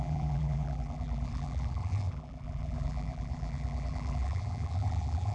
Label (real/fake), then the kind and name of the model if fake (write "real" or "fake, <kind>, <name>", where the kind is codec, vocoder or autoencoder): fake, vocoder, BigVGAN v2